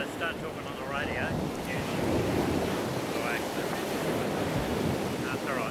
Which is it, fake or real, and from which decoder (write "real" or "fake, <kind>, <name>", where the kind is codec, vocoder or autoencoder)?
real